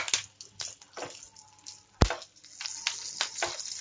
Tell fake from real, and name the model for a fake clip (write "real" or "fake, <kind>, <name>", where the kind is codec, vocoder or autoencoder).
real